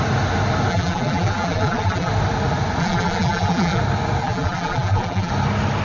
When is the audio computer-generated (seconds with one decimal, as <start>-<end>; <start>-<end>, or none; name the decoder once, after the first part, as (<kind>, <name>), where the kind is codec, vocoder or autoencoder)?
0.7-2.1 (vocoder, BigVGAN v2); 2.8-3.8; 4.2-5.3